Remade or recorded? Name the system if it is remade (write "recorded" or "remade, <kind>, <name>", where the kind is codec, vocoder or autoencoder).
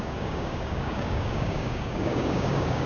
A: remade, codec, DAC